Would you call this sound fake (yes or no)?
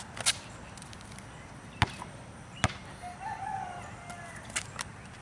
no